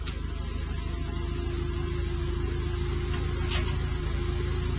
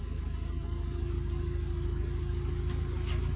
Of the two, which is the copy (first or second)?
second